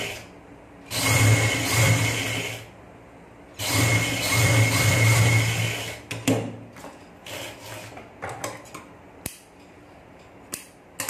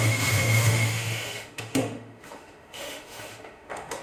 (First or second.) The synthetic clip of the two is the second